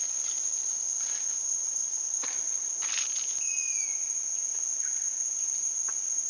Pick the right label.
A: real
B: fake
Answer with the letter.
A